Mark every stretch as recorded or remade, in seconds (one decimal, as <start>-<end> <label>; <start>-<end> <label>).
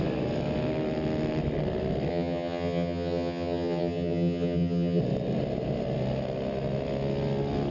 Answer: 0.0-2.1 recorded; 2.1-5.0 remade; 5.0-7.7 recorded